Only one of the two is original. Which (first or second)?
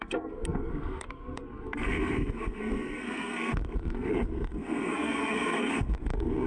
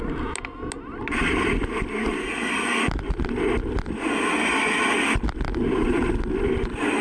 second